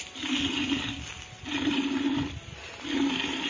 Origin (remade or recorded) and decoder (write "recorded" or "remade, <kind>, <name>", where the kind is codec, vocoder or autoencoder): recorded